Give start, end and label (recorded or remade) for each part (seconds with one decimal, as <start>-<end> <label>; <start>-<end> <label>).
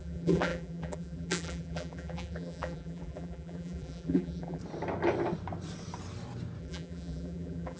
0.0-4.6 remade; 4.6-6.6 recorded; 6.6-7.8 remade